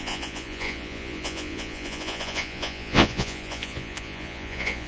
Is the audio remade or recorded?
remade